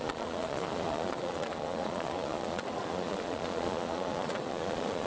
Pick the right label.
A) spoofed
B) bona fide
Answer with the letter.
A